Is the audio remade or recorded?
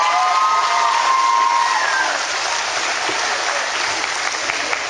recorded